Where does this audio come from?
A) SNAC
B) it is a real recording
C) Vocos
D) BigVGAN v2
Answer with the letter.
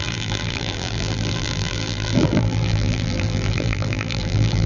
D